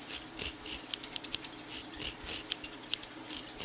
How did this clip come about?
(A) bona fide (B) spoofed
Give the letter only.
A